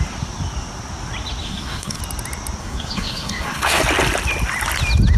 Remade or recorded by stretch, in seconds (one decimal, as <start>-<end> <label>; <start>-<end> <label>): 0.0-1.4 recorded; 1.4-2.0 remade; 2.0-2.6 recorded; 2.6-3.8 remade; 3.8-5.2 recorded